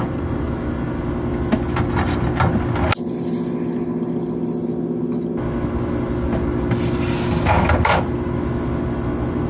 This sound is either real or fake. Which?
real